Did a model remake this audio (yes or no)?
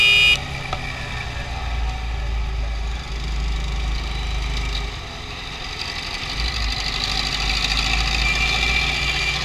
no